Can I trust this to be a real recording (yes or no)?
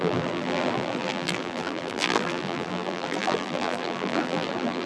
no